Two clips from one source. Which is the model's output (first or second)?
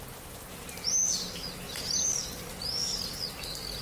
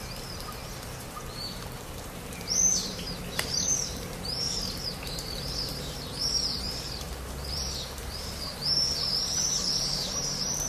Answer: second